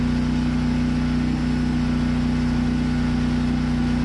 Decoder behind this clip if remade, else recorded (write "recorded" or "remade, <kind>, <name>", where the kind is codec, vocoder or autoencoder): recorded